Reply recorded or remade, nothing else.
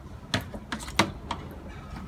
recorded